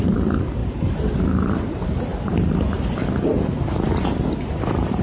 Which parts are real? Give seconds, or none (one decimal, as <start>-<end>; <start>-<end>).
0.0-5.0